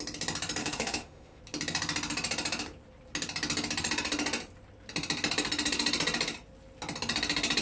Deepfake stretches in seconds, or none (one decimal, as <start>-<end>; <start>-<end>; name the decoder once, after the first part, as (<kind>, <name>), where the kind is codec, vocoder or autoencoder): 0.6-1.4 (autoencoder, DAC-VAE)